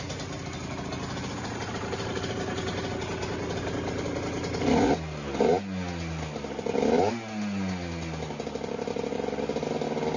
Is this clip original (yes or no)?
yes